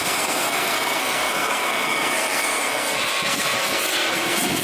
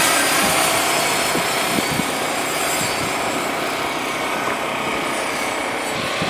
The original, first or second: second